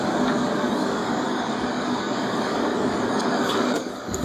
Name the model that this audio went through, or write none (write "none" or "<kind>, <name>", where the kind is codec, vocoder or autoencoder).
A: codec, DAC